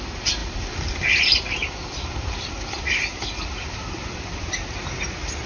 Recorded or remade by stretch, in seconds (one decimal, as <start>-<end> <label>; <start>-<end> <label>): 0.0-5.5 recorded